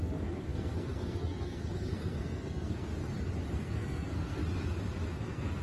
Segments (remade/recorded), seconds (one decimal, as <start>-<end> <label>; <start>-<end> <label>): 0.0-2.9 remade; 2.9-3.5 recorded; 3.5-4.4 remade; 4.4-5.1 recorded; 5.1-5.6 remade